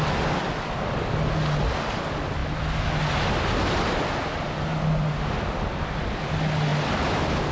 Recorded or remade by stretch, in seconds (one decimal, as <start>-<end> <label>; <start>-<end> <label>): 0.0-7.5 recorded